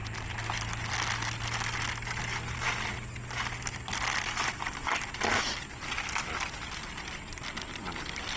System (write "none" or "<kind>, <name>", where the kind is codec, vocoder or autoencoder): none